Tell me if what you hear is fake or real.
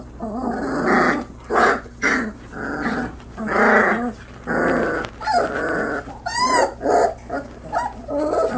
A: real